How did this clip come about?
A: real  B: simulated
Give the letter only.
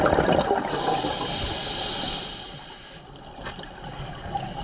A